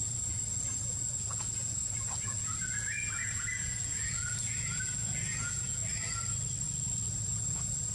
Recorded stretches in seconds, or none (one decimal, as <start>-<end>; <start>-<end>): 5.8-7.1

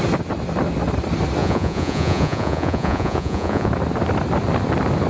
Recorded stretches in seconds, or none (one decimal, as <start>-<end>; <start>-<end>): 0.0-1.4; 3.7-5.1

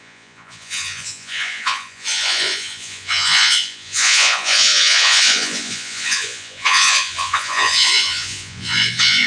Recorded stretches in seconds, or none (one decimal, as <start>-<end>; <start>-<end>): none